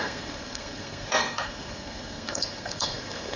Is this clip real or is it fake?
fake